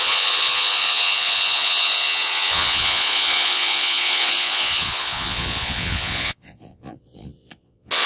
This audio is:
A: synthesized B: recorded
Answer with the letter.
A